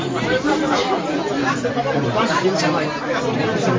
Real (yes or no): no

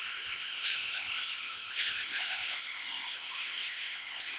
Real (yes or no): no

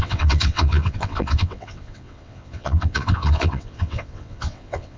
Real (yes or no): no